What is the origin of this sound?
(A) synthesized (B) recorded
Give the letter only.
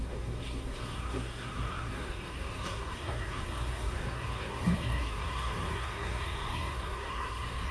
A